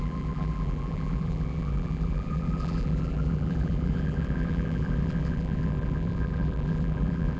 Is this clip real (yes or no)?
no